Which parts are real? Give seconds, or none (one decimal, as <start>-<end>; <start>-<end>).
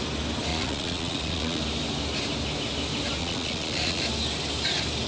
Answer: 0.0-0.5; 1.6-3.2; 4.0-5.1